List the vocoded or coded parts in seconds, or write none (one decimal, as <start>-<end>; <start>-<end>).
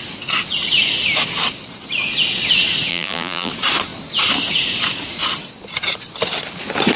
2.9-3.5